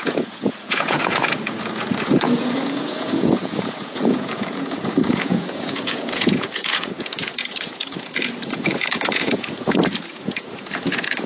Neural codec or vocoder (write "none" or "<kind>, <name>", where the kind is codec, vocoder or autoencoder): vocoder, Vocos